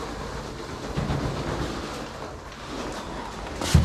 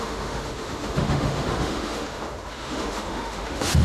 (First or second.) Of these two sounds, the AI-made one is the second